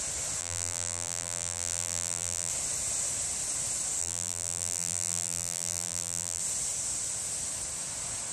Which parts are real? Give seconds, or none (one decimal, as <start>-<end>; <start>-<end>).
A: 0.0-0.4; 2.5-4.0; 6.4-8.3